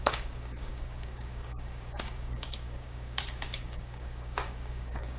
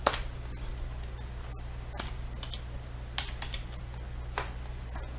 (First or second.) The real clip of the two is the second